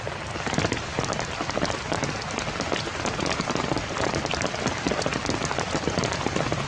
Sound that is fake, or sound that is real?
real